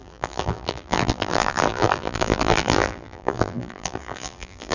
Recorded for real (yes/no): no